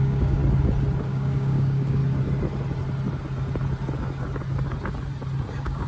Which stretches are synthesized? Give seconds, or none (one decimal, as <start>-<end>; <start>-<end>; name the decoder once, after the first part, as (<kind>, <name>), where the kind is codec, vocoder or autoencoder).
0.0-0.4 (codec, DAC); 1.1-2.0; 5.5-5.9